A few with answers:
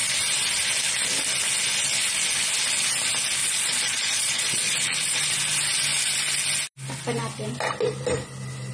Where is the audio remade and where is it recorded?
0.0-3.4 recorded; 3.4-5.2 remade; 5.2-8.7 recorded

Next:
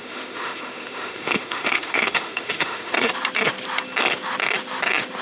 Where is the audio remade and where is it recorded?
0.0-2.9 remade; 2.9-5.2 recorded

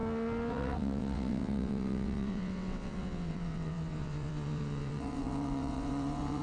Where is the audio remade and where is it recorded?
0.0-0.5 recorded; 0.5-6.4 remade

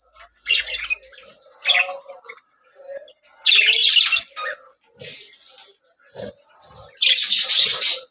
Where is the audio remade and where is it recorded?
0.0-8.1 recorded

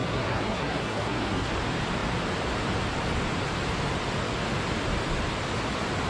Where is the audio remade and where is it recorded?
0.0-1.5 remade; 1.5-6.1 recorded

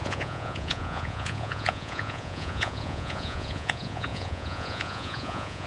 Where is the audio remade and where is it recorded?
0.0-5.7 remade